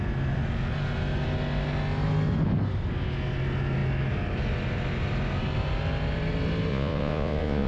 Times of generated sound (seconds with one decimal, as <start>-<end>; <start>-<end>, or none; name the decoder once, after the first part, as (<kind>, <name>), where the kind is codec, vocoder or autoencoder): 6.7-7.7 (vocoder, Vocos)